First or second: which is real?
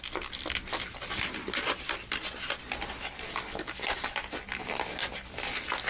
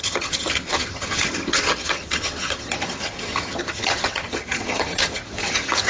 first